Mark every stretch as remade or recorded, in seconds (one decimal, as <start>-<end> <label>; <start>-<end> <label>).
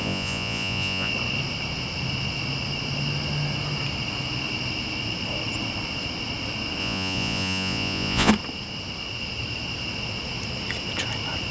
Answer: 0.0-1.1 remade; 1.1-6.8 recorded; 6.8-8.3 remade; 8.3-11.5 recorded